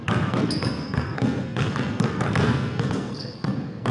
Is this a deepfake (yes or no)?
yes